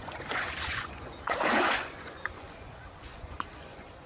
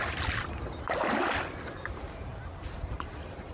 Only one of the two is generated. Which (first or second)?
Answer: first